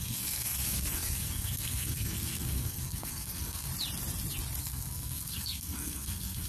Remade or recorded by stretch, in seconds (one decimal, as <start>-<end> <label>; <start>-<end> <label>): 0.0-3.7 remade; 3.7-4.6 recorded; 4.6-6.5 remade